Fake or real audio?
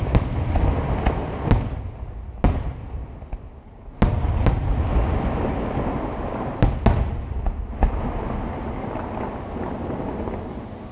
real